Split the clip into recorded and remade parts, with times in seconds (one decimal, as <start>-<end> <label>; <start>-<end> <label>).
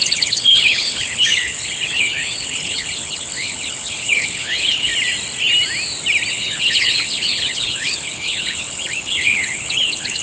0.0-4.9 remade; 4.9-6.3 recorded; 6.3-10.2 remade